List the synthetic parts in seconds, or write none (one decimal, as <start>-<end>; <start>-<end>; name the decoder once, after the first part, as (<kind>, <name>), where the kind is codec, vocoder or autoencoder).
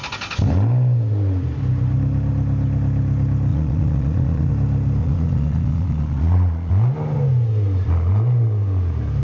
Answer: 3.5-4.5 (vocoder, Vocos); 5.0-6.7